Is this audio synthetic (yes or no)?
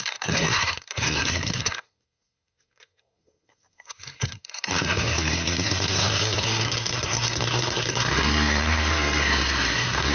yes